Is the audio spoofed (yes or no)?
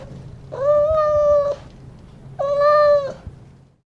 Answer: no